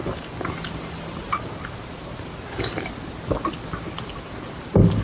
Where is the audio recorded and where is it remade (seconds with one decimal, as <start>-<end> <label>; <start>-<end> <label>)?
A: 0.0-5.0 recorded